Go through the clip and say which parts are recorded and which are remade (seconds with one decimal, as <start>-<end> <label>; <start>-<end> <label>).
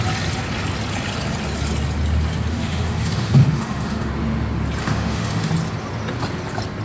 0.0-2.5 recorded; 2.5-4.1 remade; 4.1-4.8 recorded; 4.8-5.5 remade; 5.5-6.8 recorded